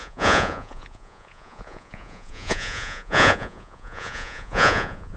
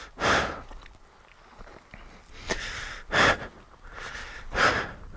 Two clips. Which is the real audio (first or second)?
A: second